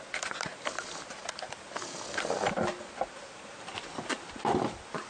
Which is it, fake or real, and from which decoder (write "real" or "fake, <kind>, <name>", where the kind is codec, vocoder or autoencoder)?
real